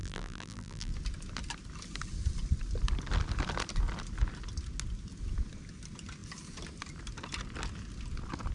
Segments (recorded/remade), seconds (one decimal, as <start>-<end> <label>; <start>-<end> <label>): 0.0-0.9 remade; 0.9-8.5 recorded